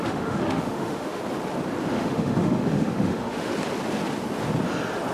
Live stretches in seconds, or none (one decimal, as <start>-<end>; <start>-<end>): 1.2-1.9; 3.5-5.1